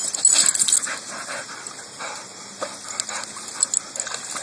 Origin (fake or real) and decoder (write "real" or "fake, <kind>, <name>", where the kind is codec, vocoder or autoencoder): real